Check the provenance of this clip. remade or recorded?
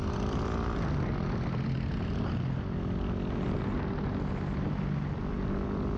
recorded